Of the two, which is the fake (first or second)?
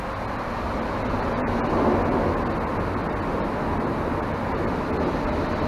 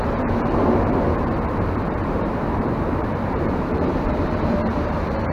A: second